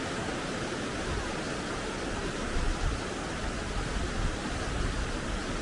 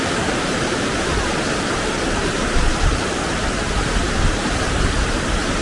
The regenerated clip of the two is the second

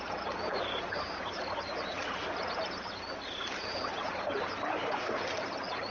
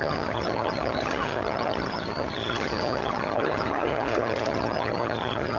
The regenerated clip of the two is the second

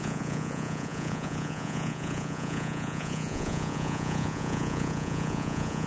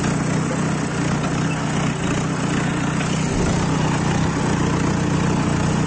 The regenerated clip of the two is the first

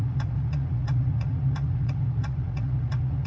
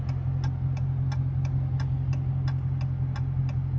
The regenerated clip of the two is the first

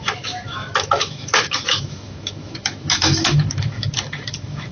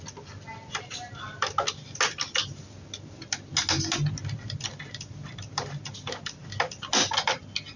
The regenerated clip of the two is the first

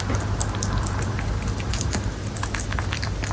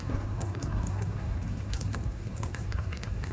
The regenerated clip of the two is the second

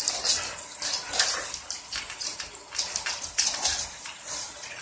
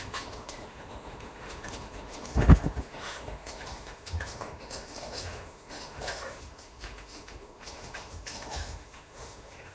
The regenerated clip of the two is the second